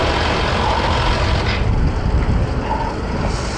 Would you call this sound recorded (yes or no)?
yes